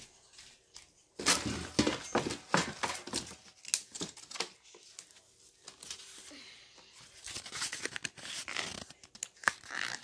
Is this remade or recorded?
recorded